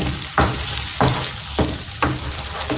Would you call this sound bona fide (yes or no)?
yes